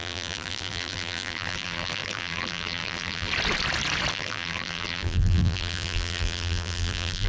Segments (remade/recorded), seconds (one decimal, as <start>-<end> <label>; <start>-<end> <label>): 0.0-3.3 remade; 3.3-4.1 recorded; 4.1-7.3 remade